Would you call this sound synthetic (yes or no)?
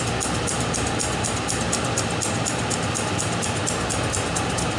no